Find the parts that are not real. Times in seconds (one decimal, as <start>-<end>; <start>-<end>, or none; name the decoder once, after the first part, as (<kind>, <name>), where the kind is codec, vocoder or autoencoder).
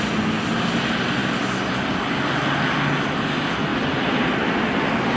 1.2-2.2 (vocoder, BigVGAN v2); 3.7-4.2